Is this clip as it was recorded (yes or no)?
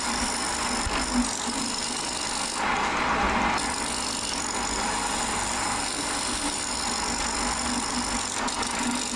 yes